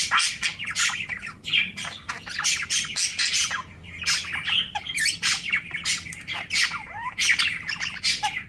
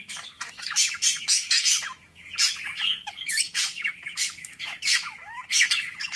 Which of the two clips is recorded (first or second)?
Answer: first